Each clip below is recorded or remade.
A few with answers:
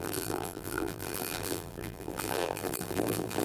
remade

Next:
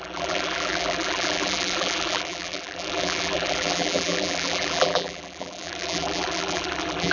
remade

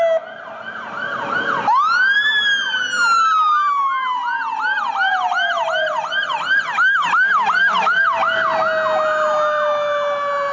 recorded